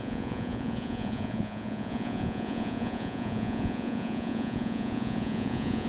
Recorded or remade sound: remade